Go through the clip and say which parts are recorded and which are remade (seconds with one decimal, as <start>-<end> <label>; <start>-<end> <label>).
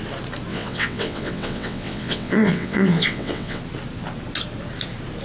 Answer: 0.0-0.5 recorded; 0.5-3.6 remade; 3.6-5.2 recorded